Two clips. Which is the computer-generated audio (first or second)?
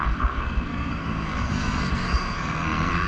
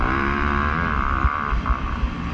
first